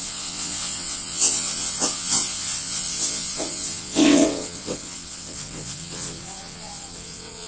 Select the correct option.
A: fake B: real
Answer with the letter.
A